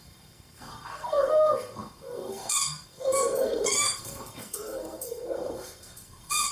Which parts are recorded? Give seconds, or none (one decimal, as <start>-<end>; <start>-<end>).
none